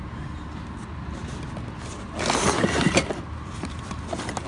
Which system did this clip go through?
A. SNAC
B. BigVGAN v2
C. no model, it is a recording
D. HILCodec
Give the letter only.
C